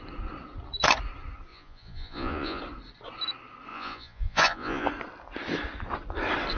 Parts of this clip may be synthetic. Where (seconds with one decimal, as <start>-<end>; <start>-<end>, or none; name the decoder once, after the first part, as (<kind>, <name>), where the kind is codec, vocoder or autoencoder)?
1.5-2.6 (vocoder, Vocos); 3.7-4.9